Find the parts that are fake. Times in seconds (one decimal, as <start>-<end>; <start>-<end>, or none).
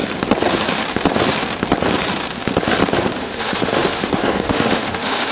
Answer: 3.2-5.3